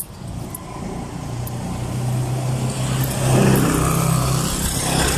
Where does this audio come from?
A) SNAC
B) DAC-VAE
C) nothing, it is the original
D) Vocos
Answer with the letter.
C